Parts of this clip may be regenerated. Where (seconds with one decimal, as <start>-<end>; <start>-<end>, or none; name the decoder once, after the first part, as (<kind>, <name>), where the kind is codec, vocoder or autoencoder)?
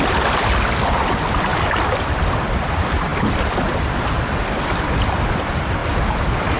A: none